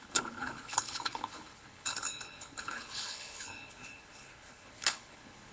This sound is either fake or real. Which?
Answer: fake